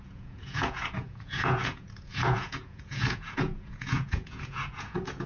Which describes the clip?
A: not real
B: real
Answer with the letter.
A